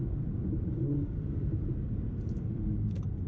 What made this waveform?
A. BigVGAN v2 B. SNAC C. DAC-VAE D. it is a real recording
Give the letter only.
A